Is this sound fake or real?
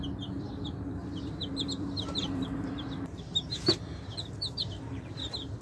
fake